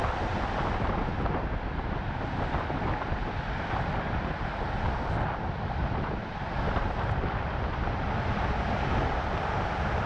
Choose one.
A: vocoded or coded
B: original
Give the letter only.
B